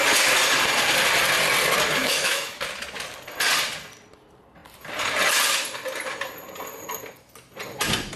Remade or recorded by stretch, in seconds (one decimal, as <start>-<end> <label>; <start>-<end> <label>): 0.0-2.0 recorded; 2.0-2.6 remade; 2.6-8.2 recorded